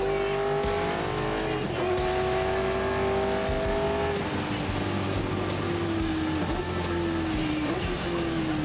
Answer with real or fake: real